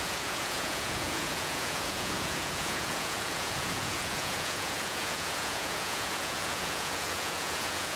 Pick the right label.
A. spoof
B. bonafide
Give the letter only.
A